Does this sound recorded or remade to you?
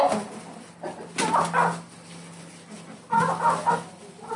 recorded